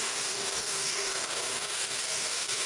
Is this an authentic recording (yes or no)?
no